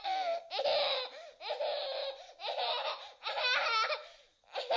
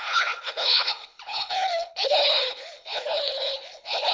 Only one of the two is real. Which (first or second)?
first